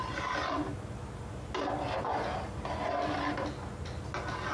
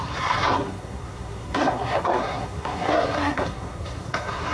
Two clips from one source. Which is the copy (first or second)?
second